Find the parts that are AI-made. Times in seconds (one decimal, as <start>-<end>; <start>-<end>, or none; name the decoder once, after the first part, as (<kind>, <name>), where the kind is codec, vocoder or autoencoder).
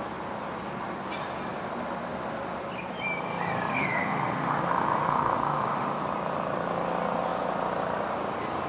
3.7-6.0 (autoencoder, DAC-VAE)